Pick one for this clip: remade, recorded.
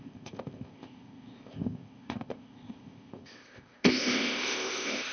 remade